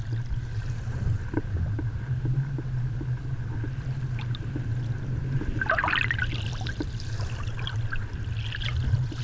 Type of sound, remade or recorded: recorded